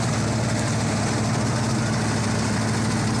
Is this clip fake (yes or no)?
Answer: no